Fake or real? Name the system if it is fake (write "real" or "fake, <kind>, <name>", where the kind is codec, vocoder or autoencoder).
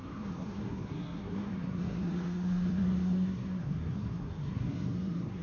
fake, codec, SNAC